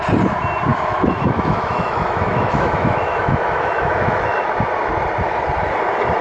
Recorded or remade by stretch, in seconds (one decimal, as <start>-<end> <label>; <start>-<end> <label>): 0.0-0.7 recorded; 0.7-4.4 remade; 4.4-6.2 recorded